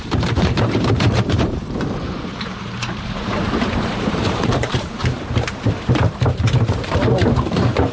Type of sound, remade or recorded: remade